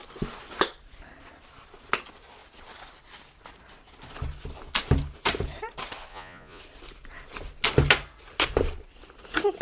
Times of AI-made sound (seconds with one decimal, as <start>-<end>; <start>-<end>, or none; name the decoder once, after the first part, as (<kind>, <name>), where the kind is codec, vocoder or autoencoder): 6.1-6.6 (vocoder, Vocos)